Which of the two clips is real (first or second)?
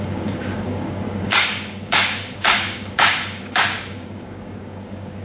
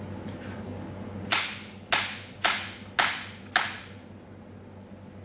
second